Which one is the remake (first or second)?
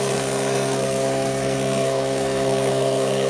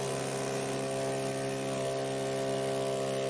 first